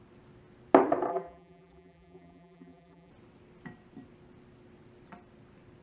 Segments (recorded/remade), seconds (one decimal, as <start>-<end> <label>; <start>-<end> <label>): 0.0-1.1 recorded; 1.1-3.1 remade; 3.1-5.8 recorded